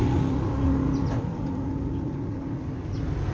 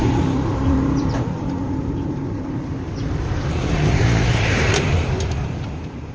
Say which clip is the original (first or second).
first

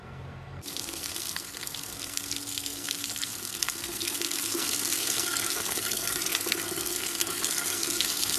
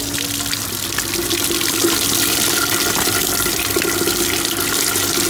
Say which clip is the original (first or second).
second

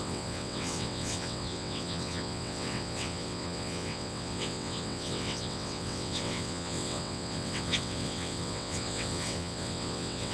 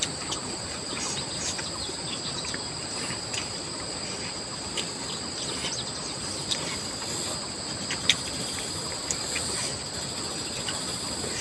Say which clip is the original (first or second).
second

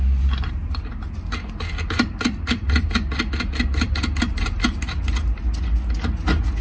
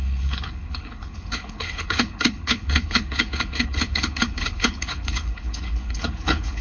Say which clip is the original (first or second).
first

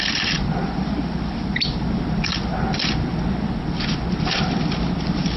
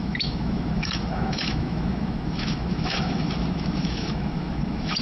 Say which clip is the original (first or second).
first